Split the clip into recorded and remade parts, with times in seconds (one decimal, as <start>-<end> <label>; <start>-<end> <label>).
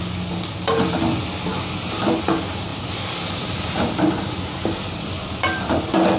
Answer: 0.0-6.2 recorded